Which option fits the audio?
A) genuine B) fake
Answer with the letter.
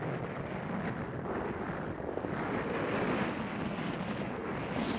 A